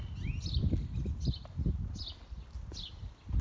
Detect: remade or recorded recorded